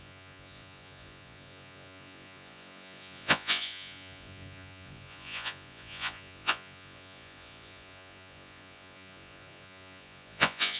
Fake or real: fake